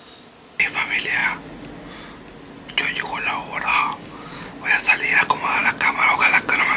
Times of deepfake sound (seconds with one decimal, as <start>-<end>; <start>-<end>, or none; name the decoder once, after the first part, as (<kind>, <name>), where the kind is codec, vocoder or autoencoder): 3.7-4.5 (codec, DAC)